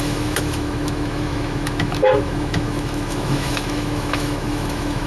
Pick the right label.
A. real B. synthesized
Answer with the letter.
B